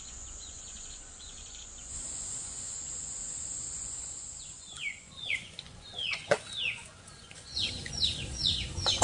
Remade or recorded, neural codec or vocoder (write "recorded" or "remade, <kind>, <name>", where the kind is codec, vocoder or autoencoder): remade, vocoder, Vocos